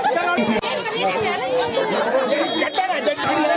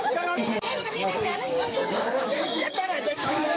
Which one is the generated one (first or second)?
second